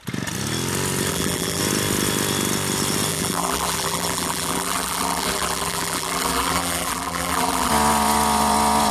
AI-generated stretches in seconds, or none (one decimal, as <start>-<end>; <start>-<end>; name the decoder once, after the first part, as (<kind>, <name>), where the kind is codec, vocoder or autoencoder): 1.1-1.6 (vocoder, BigVGAN v2); 3.1-7.7